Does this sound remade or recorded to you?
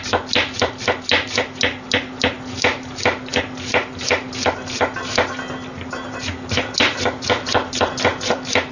recorded